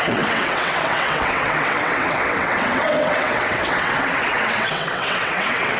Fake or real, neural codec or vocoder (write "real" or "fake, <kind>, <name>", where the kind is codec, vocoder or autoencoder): fake, vocoder, WaveNeXt